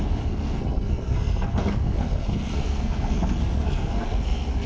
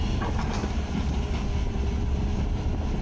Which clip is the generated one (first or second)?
first